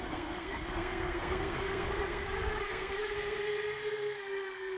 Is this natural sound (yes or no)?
no